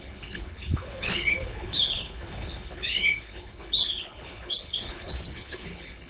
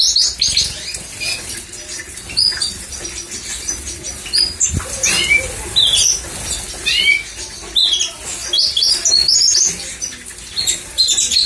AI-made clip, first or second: first